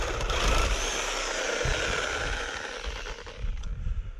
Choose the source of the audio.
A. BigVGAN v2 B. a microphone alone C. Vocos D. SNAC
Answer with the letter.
A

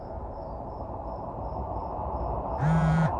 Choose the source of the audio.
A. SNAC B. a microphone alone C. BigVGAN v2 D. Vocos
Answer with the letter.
C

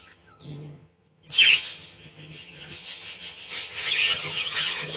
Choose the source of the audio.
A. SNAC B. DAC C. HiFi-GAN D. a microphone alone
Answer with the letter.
C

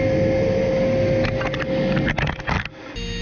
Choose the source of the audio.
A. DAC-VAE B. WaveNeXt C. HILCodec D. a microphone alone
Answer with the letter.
D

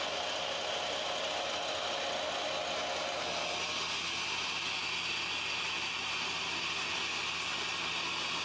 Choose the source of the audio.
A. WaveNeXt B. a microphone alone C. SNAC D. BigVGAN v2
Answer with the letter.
B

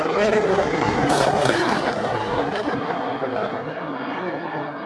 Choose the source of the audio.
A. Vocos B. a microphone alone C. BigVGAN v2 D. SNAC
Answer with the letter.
D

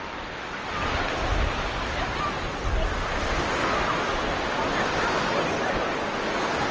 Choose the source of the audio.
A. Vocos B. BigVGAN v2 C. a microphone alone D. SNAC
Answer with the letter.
C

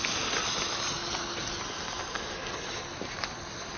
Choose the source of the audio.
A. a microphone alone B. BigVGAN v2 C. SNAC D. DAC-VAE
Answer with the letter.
A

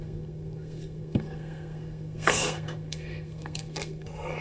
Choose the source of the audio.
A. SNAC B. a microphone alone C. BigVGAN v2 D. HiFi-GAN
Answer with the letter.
A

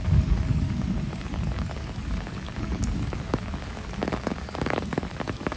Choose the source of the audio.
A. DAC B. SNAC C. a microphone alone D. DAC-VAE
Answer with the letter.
A